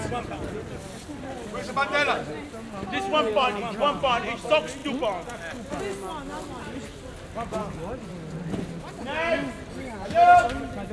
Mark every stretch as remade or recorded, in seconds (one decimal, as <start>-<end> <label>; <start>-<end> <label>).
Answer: 0.0-10.9 recorded